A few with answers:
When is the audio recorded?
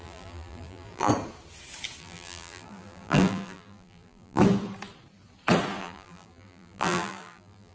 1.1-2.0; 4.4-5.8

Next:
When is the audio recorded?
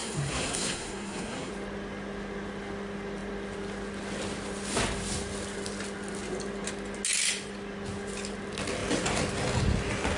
1.5-10.2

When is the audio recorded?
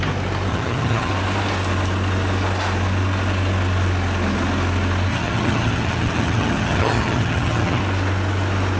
0.0-0.5; 1.1-5.1; 7.8-8.8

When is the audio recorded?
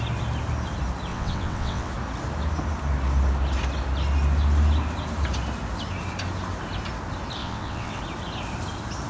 0.0-1.1; 1.9-7.4; 8.0-9.1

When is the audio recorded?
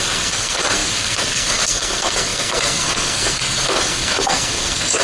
none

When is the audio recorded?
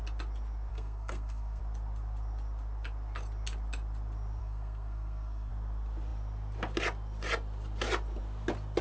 0.0-0.7; 1.6-4.4; 5.5-8.8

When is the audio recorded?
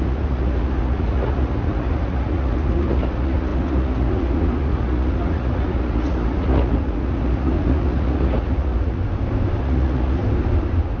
9.0-9.6; 10.2-11.0